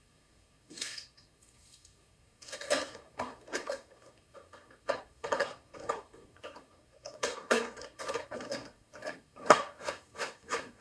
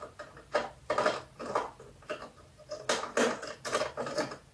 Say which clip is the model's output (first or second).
first